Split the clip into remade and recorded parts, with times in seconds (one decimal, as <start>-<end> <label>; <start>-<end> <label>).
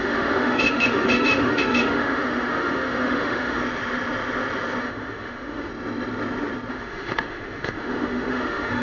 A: 0.0-3.6 remade; 3.6-4.8 recorded; 4.8-5.7 remade; 5.7-6.7 recorded; 6.7-8.8 remade